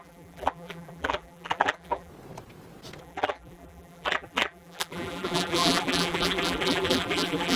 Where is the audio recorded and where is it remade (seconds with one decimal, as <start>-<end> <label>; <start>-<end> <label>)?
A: 0.0-2.1 remade; 2.1-3.0 recorded; 3.0-7.6 remade